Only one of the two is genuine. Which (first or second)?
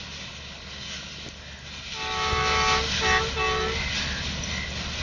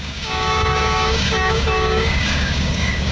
first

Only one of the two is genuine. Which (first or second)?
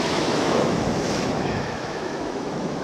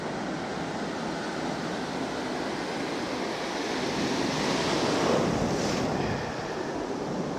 second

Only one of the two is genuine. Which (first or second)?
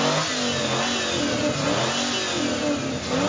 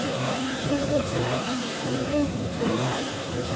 first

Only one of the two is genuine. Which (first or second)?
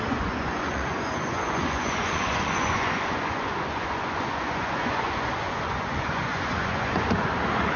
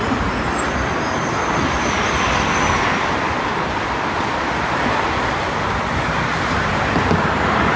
second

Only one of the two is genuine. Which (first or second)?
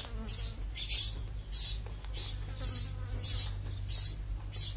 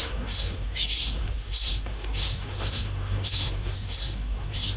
first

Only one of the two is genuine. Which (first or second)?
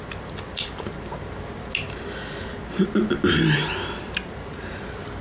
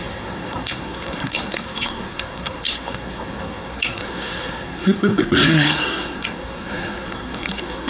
first